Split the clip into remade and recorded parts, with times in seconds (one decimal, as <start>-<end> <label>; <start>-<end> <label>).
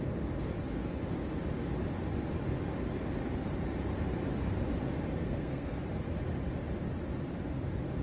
0.0-5.2 recorded; 5.2-5.7 remade; 5.7-8.0 recorded